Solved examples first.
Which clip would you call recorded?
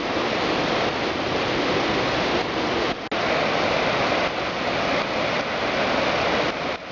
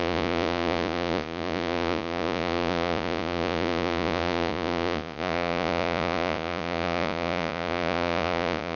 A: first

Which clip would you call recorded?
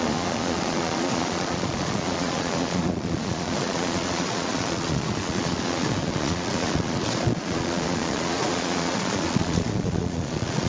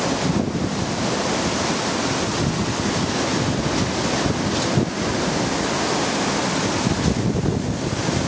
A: second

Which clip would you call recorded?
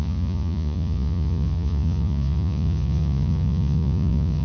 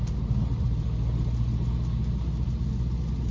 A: second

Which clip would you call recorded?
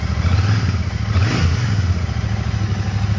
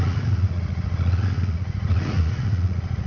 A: first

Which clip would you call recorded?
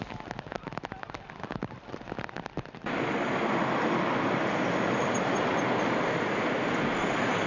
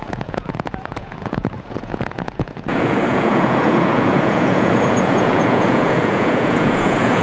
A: first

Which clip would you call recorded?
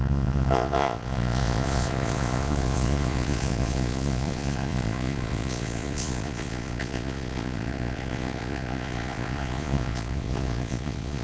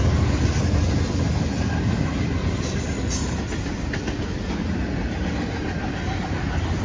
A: second